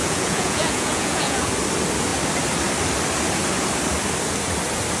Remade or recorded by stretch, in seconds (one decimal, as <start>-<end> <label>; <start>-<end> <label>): 0.0-1.5 remade; 1.5-5.0 recorded